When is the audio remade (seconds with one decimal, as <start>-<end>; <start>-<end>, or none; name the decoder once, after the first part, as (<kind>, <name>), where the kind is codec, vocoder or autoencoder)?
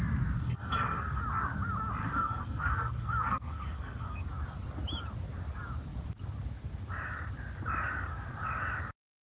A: 0.4-1.2 (codec, SNAC); 2.0-4.2